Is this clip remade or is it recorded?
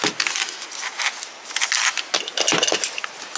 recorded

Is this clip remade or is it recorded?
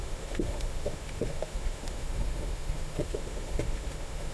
remade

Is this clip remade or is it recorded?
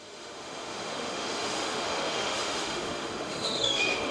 remade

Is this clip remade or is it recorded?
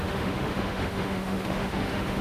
remade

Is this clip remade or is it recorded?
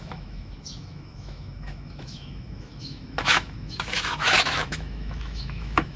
remade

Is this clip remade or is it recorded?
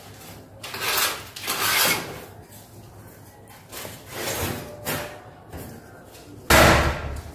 recorded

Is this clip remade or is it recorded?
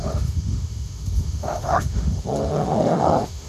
remade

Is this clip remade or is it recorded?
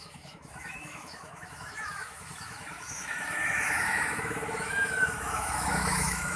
remade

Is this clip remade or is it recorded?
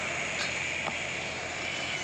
recorded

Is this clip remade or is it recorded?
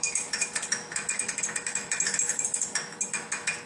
remade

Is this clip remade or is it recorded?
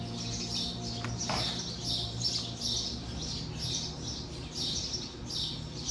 recorded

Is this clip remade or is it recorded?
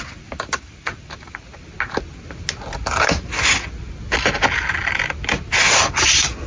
recorded